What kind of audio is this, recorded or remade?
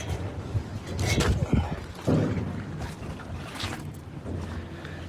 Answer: recorded